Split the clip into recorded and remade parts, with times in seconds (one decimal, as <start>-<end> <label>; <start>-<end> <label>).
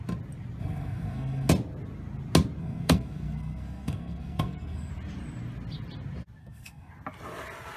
0.0-0.6 recorded; 0.6-1.5 remade; 1.5-2.6 recorded; 2.6-4.9 remade; 4.9-6.4 recorded; 6.4-6.9 remade; 6.9-7.8 recorded